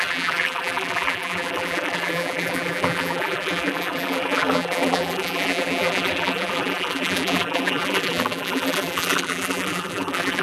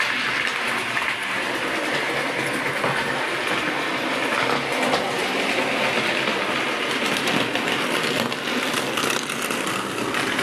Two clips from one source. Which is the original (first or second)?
second